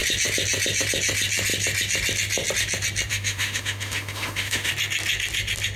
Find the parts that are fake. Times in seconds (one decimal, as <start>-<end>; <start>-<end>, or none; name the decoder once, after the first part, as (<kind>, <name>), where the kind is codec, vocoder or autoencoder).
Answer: 3.1-4.7 (autoencoder, DAC-VAE)